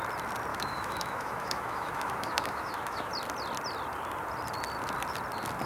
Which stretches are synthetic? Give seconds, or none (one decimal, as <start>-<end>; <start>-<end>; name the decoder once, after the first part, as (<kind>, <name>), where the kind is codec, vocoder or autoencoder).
0.5-3.1 (autoencoder, DAC-VAE)